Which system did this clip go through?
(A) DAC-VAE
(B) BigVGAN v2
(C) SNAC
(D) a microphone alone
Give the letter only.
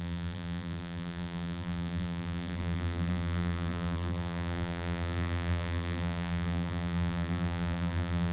B